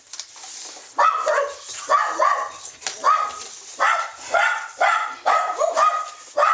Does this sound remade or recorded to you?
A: recorded